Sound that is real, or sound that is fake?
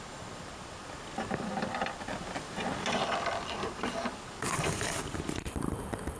fake